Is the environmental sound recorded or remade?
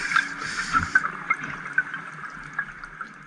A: recorded